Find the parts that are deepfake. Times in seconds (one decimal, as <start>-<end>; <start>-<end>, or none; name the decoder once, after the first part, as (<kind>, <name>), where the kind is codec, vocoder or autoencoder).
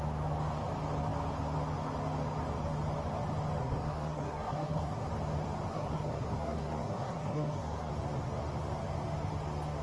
3.6-5.1 (codec, SNAC); 5.7-7.9